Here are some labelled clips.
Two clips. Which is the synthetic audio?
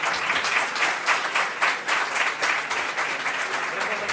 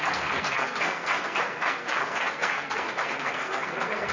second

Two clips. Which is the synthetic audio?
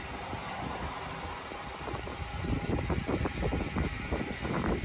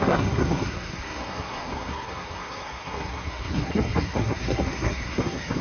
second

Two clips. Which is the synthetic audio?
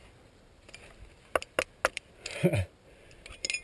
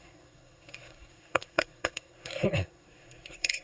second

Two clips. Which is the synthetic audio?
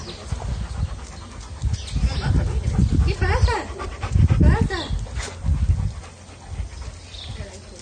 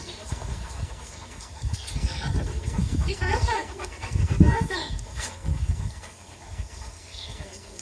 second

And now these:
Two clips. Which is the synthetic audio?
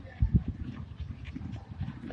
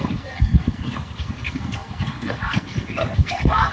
second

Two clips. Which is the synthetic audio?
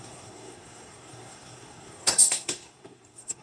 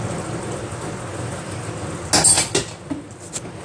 first